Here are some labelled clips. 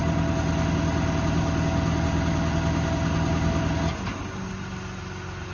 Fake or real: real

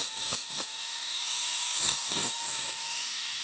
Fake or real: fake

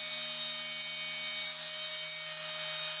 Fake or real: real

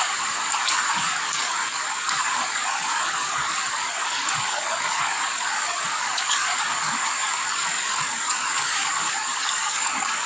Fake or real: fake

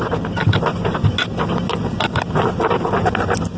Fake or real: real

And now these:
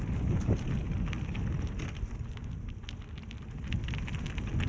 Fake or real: real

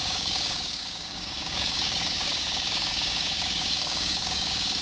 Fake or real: fake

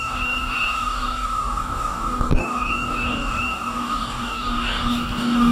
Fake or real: fake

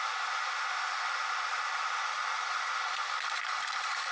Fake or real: real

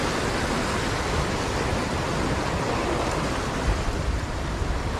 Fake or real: real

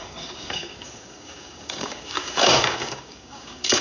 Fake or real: fake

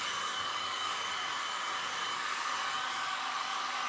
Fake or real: fake